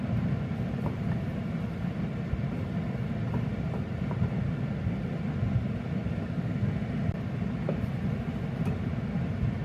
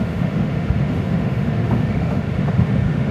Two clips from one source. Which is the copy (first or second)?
second